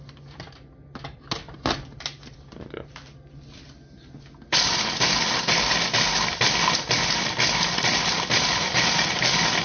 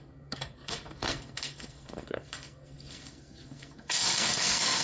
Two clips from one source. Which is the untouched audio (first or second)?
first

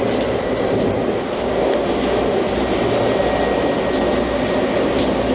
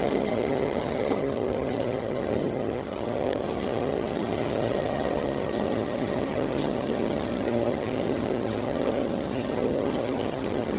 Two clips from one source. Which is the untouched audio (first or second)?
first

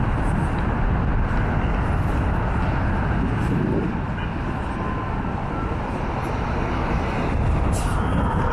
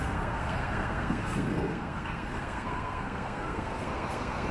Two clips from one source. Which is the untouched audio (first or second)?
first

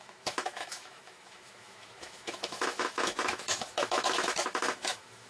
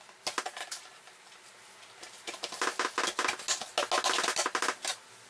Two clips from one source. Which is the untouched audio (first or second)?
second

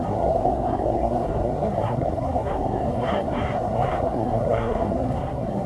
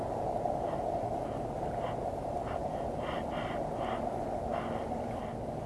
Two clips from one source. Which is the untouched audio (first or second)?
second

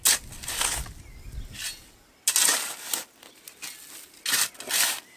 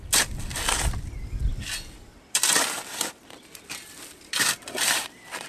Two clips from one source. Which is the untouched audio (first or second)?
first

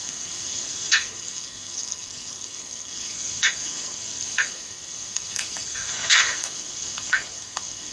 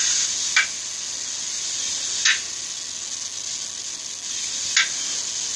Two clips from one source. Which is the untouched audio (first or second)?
second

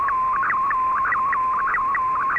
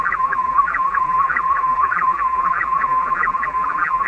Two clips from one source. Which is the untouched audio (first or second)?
first